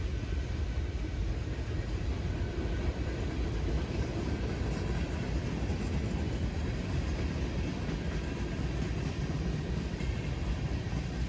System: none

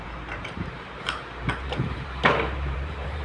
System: vocoder, BigVGAN v2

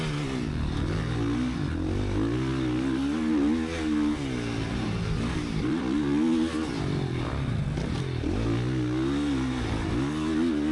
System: none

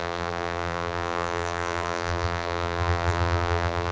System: vocoder, BigVGAN v2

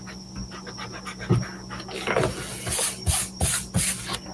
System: none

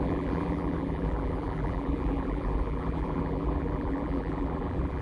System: vocoder, BigVGAN v2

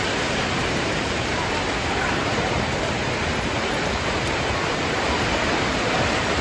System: vocoder, BigVGAN v2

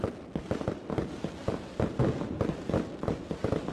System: none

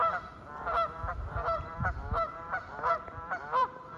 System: vocoder, BigVGAN v2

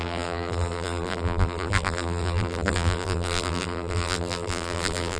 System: vocoder, BigVGAN v2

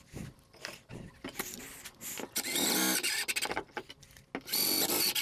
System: none